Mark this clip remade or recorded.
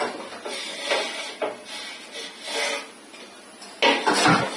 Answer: recorded